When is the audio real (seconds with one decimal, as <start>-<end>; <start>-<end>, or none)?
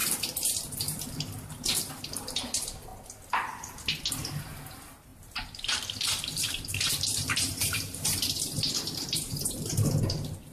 0.0-5.1; 10.0-10.5